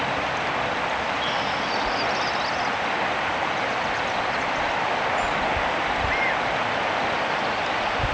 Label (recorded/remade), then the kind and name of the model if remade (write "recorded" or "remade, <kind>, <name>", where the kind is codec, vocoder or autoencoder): recorded